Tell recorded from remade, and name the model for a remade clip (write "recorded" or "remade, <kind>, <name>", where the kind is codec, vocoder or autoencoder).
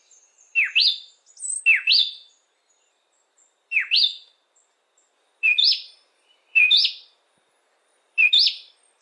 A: recorded